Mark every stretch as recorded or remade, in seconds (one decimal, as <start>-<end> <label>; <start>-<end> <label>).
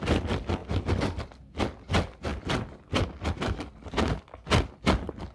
0.0-5.3 recorded